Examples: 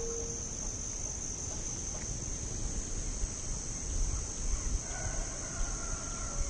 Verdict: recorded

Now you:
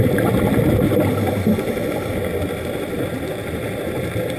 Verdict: recorded